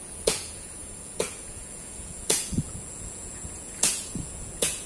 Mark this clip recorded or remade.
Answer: remade